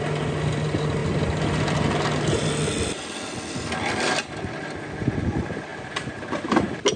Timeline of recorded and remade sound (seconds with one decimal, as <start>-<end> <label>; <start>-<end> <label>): 0.0-7.0 recorded